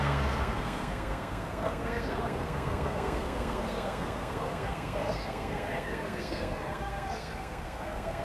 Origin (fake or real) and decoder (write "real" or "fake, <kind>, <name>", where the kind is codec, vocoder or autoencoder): fake, codec, SNAC